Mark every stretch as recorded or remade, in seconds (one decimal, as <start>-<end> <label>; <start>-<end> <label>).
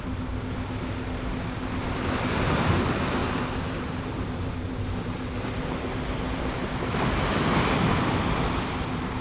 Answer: 0.0-3.2 recorded; 3.2-6.4 remade; 6.4-9.2 recorded